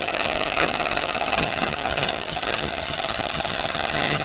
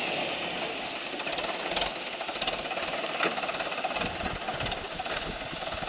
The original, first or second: second